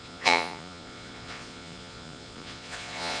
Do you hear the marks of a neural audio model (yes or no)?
yes